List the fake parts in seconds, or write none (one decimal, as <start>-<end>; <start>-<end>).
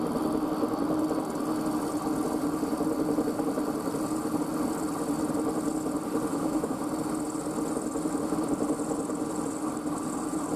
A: 6.3-6.8